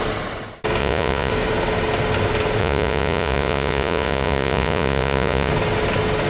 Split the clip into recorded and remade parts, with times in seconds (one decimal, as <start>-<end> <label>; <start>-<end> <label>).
0.0-0.8 recorded; 0.8-1.3 remade; 1.3-2.6 recorded; 2.6-5.5 remade; 5.5-6.3 recorded